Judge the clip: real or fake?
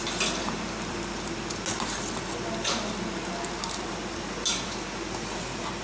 real